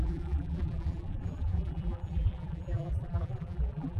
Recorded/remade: remade